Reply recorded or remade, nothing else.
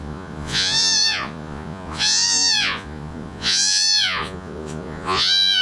remade